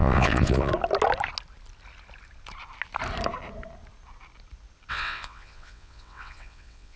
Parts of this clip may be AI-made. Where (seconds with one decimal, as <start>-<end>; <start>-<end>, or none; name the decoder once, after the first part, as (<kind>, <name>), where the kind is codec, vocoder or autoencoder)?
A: 0.0-0.7 (vocoder, WaveNeXt); 4.9-7.0